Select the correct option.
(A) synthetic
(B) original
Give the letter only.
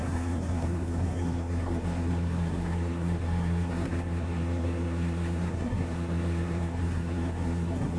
A